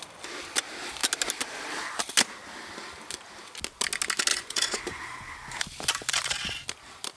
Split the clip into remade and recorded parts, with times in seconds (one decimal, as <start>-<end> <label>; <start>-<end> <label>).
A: 0.0-4.3 recorded; 4.3-5.0 remade; 5.0-7.2 recorded

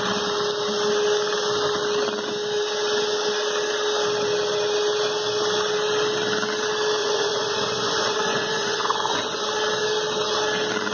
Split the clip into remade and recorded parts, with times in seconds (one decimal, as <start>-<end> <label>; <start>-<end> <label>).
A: 0.0-7.0 recorded; 7.0-9.4 remade; 9.4-10.9 recorded